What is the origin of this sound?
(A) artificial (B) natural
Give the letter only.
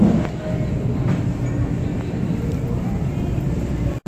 B